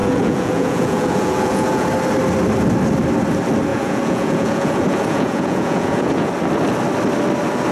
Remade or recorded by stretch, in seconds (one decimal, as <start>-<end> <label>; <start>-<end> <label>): 0.0-1.9 remade; 1.9-3.7 recorded; 3.7-6.3 remade; 6.3-7.7 recorded